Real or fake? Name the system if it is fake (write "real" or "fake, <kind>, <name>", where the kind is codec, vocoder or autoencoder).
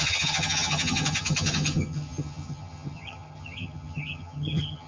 fake, vocoder, HiFi-GAN